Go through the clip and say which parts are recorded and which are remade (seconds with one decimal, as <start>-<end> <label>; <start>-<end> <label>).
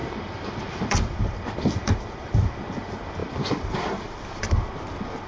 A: 0.0-2.5 remade; 2.5-3.2 recorded; 3.2-4.4 remade; 4.4-5.3 recorded